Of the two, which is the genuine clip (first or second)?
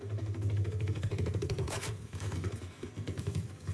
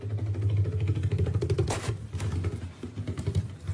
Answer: second